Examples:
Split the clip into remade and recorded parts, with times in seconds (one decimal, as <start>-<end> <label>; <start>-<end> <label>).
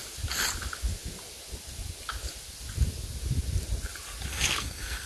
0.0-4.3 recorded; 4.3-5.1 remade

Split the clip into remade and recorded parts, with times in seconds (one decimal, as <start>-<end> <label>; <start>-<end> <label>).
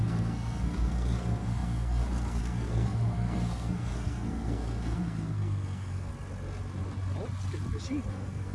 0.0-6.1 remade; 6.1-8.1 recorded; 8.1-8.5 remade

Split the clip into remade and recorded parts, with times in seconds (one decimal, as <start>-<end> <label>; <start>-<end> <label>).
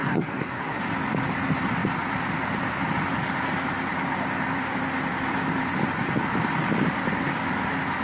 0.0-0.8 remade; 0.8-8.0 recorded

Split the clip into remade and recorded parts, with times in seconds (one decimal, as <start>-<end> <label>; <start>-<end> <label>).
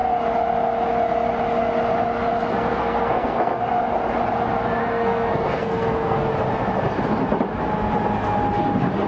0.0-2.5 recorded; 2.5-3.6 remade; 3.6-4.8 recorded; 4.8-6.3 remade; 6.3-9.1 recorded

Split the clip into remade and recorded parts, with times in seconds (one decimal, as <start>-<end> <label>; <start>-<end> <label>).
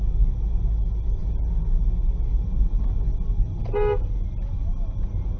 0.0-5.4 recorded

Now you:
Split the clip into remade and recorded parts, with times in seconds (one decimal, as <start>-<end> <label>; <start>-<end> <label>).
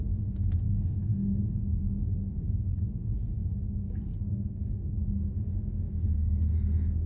0.0-2.9 remade; 2.9-4.0 recorded; 4.0-4.8 remade; 4.8-6.1 recorded; 6.1-7.1 remade